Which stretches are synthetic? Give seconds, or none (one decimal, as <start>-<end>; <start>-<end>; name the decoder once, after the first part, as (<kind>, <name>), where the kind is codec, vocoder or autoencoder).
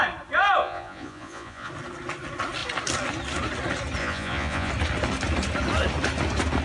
0.6-1.7 (vocoder, Vocos); 4.0-4.7